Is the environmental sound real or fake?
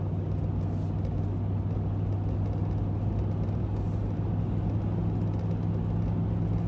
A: real